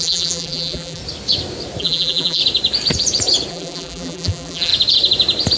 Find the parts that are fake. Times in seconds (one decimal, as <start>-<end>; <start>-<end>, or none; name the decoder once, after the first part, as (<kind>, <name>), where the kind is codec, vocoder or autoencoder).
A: 0.0-1.0 (vocoder, BigVGAN v2); 1.8-2.4; 3.5-4.7